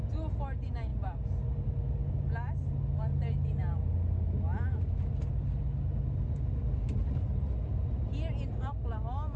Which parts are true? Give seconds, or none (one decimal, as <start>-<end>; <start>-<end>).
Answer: 0.0-9.4